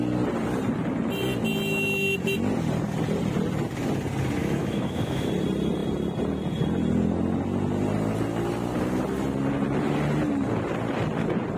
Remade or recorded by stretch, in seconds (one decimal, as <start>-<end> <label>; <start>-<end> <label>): 0.0-4.4 recorded; 4.4-5.3 remade; 5.3-11.6 recorded